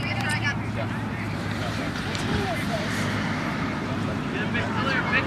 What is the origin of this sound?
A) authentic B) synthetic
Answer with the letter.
B